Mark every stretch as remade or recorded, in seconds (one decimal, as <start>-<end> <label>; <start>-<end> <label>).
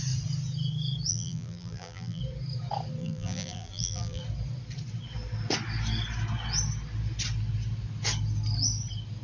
0.0-1.1 recorded; 1.1-2.2 remade; 2.2-3.0 recorded; 3.0-4.2 remade; 4.2-9.2 recorded